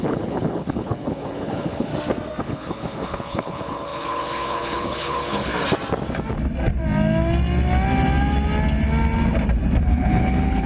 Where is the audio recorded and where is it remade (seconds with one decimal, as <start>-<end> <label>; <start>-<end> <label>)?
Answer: 0.0-1.9 remade; 1.9-2.4 recorded; 2.4-5.5 remade; 5.5-9.8 recorded; 9.8-10.7 remade